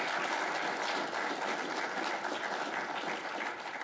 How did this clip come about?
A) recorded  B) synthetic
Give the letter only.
A